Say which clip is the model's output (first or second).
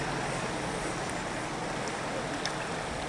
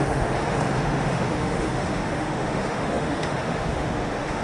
second